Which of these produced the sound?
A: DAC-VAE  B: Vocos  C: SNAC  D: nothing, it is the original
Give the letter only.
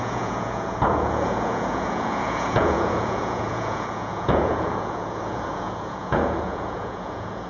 B